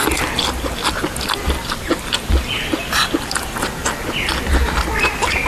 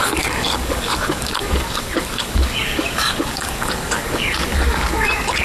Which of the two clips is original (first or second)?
first